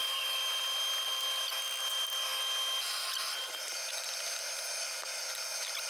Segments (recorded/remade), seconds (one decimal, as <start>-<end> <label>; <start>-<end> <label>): 0.0-5.9 recorded